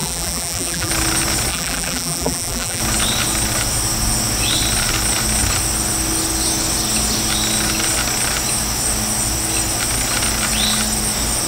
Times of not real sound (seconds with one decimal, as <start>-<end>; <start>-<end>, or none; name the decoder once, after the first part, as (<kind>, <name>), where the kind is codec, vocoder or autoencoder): 0.0-0.9 (vocoder, BigVGAN v2); 1.5-2.8